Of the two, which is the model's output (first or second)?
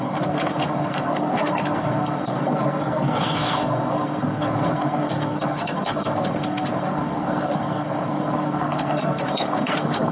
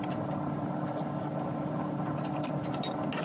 first